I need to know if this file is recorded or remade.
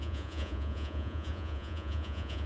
remade